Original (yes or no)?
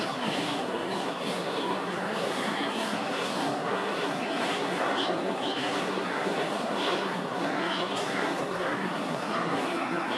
no